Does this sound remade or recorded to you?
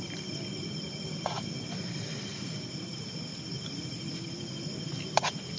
recorded